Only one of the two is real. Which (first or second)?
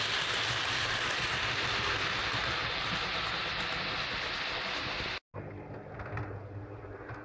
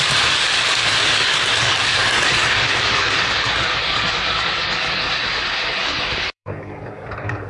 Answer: first